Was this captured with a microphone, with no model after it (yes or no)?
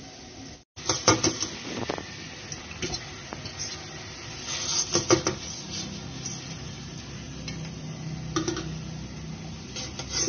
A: yes